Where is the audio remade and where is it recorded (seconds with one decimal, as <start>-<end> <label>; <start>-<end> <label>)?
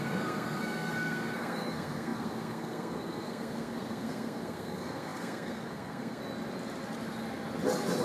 0.0-6.2 remade; 6.2-8.0 recorded